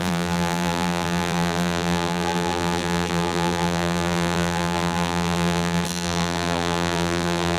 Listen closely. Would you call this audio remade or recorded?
remade